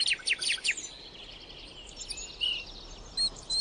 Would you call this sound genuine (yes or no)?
yes